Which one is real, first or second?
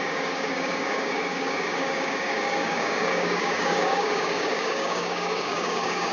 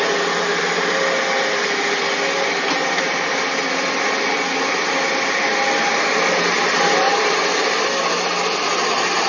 second